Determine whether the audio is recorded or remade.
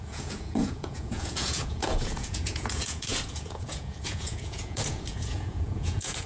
remade